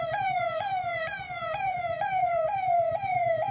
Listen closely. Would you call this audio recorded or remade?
remade